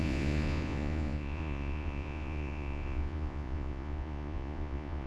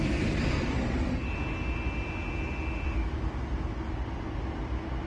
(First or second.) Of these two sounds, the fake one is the first